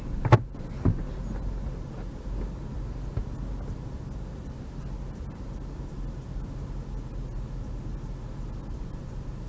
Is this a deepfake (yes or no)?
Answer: no